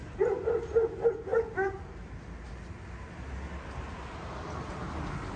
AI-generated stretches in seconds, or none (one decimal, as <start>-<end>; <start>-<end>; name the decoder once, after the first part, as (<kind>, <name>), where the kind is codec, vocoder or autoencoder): none